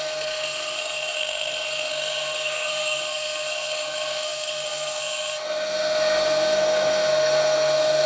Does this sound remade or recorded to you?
remade